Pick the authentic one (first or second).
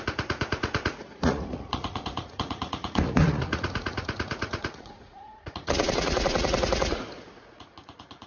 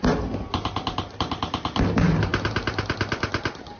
second